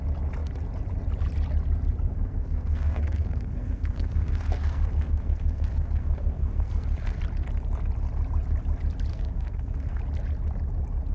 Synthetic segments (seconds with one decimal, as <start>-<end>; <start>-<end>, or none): 2.1-7.2; 9.1-10.0